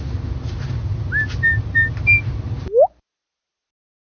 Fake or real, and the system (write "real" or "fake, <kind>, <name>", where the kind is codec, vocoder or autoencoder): real